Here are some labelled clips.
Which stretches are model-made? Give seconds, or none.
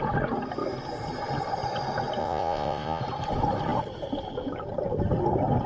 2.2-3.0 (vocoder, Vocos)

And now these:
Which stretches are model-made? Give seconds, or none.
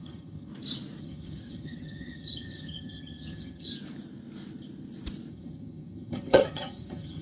0.0-0.5 (vocoder, HiFi-GAN); 1.0-3.7; 5.3-7.2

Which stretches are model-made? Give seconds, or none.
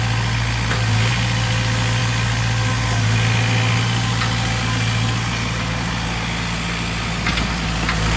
2.0-2.7 (vocoder, BigVGAN v2)